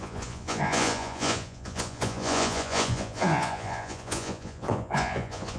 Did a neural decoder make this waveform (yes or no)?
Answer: yes